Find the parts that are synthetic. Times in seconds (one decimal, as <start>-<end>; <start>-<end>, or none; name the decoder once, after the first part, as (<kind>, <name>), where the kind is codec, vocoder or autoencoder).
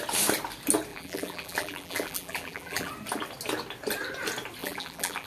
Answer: 0.9-2.9 (vocoder, BigVGAN v2); 4.6-5.3